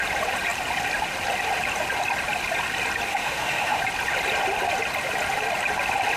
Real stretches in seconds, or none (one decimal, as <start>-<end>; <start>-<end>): 0.0-3.1; 3.8-6.2